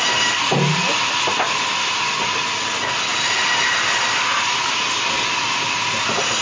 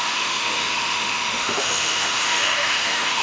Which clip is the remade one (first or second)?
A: second